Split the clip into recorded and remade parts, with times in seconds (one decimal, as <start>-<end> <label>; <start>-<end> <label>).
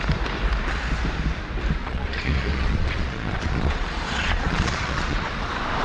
0.0-1.8 recorded; 1.8-5.3 remade; 5.3-5.8 recorded